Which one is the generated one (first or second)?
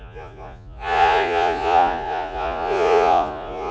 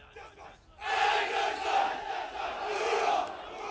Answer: first